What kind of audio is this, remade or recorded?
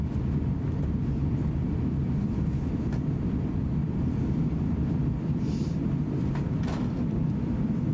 remade